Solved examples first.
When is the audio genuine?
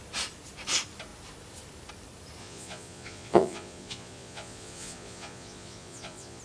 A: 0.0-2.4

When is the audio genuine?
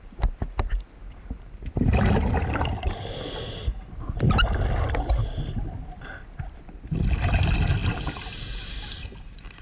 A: 0.0-9.6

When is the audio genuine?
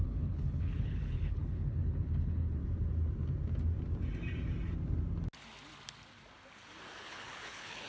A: 2.6-7.0